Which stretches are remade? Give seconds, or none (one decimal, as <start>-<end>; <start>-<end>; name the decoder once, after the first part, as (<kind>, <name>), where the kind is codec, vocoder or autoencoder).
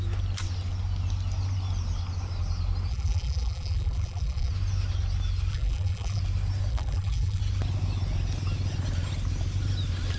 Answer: 2.9-4.5 (vocoder, BigVGAN v2); 5.5-6.2; 6.7-7.4